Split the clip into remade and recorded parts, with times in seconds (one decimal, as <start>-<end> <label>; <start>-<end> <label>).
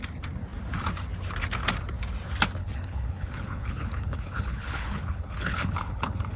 0.0-2.6 recorded; 2.6-6.4 remade